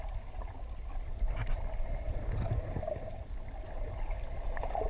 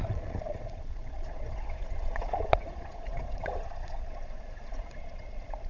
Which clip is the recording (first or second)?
first